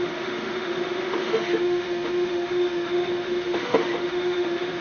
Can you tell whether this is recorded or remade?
remade